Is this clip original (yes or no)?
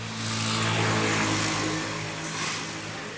yes